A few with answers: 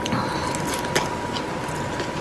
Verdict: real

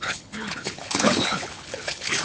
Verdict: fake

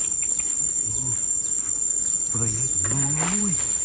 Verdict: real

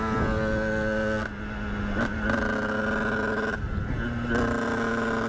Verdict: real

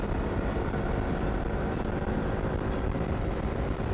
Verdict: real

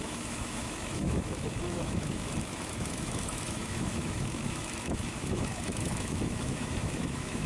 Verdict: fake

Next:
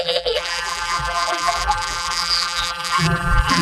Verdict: fake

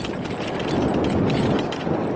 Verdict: real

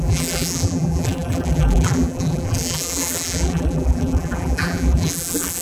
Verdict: fake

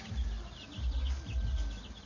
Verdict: real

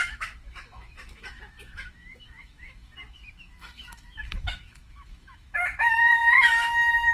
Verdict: fake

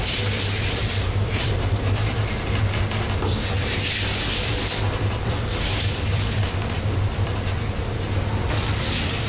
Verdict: fake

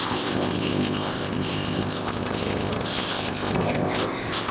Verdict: fake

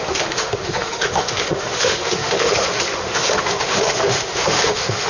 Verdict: fake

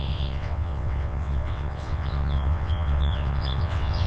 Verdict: fake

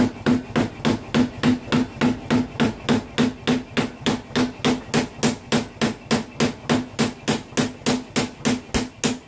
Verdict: real